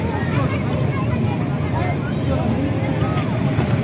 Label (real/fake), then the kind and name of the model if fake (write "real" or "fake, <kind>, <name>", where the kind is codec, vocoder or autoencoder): real